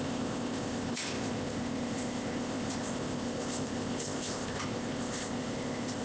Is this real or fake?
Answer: fake